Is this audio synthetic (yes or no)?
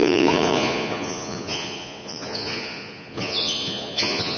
yes